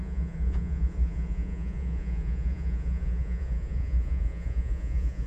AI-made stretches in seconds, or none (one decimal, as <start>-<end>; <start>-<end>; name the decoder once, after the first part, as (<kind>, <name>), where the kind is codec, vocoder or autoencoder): 0.0-5.3 (vocoder, Vocos)